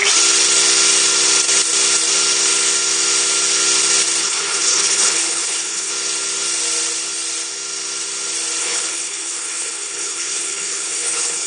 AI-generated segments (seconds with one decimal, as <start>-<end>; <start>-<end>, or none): 4.2-5.9; 8.6-11.5

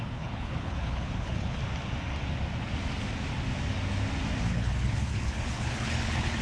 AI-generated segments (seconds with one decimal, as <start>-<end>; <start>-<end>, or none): 0.0-1.6; 4.5-6.4